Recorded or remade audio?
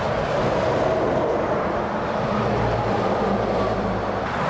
remade